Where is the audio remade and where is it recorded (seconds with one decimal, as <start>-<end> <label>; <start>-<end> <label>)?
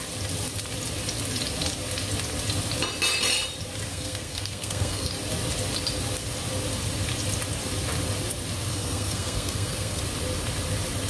0.0-3.9 recorded; 3.9-5.1 remade; 5.1-8.7 recorded; 8.7-10.0 remade; 10.0-11.1 recorded